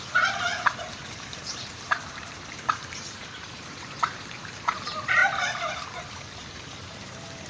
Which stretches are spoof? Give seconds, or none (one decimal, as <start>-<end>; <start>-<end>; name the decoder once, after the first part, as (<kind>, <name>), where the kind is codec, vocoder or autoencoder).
0.5-4.6 (vocoder, BigVGAN v2)